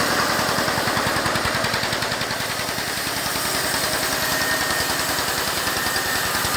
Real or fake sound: real